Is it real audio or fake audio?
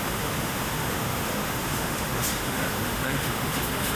fake